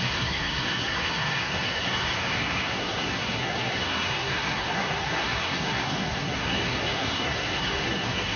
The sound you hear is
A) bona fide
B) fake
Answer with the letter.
B